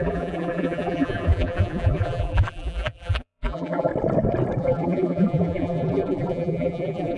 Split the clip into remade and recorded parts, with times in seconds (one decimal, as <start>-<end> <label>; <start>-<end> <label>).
0.0-3.9 remade; 3.9-4.6 recorded; 4.6-7.2 remade